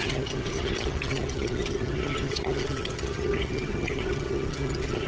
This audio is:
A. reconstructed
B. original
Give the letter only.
A